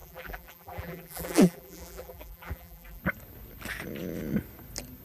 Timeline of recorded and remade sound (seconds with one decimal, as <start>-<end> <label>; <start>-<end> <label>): 0.0-3.0 remade; 3.0-5.0 recorded

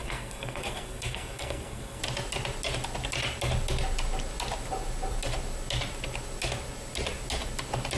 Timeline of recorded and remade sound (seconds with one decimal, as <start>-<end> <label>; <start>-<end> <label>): 0.0-2.0 remade; 2.0-8.0 recorded

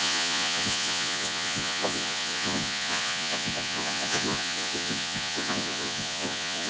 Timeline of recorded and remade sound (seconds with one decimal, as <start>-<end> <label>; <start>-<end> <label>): 0.0-6.7 remade

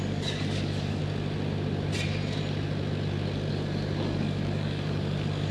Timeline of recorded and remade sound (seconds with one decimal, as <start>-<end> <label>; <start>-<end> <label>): 0.0-1.0 remade; 1.0-3.5 recorded; 3.5-5.5 remade

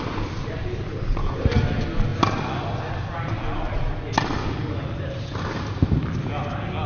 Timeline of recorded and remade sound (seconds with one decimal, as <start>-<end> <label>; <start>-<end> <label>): 0.0-6.9 recorded